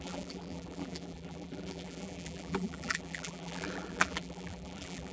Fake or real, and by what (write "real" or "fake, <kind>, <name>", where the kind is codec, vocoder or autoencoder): fake, vocoder, BigVGAN v2